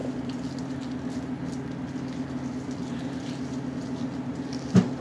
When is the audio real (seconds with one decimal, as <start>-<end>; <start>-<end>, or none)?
0.0-5.0